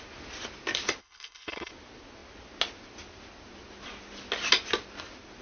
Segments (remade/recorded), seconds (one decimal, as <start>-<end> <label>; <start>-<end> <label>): 0.0-1.0 recorded; 1.0-1.7 remade; 1.7-5.4 recorded